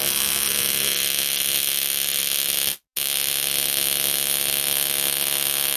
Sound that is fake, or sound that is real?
real